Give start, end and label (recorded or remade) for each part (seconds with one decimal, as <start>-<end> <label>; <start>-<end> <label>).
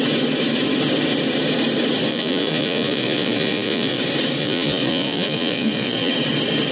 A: 0.0-2.1 recorded; 2.1-4.0 remade; 4.0-4.4 recorded; 4.4-6.1 remade; 6.1-6.7 recorded